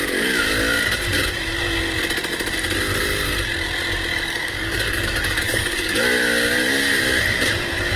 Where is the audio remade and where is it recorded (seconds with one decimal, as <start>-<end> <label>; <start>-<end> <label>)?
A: 0.0-4.1 recorded; 4.1-6.0 remade; 6.0-8.0 recorded